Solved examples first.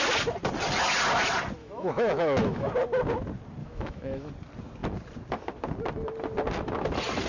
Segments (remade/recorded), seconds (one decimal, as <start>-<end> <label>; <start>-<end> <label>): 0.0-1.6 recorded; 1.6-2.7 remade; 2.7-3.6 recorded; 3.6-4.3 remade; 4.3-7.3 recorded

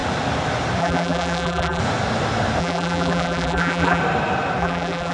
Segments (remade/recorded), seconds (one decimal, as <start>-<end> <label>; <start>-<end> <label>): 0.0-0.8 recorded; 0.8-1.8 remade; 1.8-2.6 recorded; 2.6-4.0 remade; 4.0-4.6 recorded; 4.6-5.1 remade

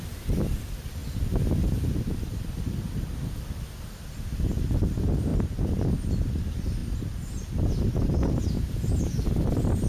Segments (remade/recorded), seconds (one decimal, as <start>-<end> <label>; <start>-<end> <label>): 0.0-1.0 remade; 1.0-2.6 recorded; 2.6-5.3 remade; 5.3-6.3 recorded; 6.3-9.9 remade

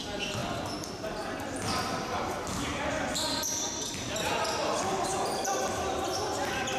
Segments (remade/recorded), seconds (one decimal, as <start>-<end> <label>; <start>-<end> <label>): 0.0-0.4 remade; 0.4-1.1 recorded; 1.1-2.7 remade; 2.7-3.7 recorded; 3.7-6.8 remade

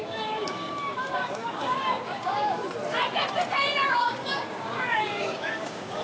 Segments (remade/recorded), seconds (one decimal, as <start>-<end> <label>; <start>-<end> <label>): 0.0-2.6 remade; 2.6-3.9 recorded; 3.9-6.0 remade